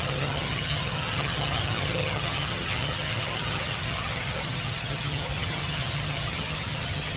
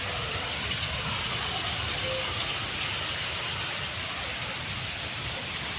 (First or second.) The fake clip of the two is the first